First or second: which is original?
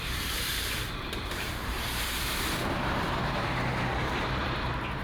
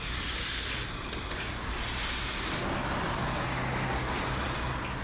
second